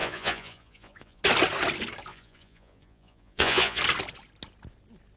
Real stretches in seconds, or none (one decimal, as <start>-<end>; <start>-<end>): 1.2-2.1; 3.8-5.2